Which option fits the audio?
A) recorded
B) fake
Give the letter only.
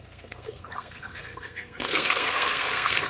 B